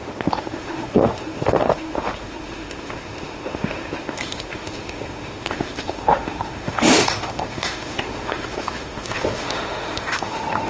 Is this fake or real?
fake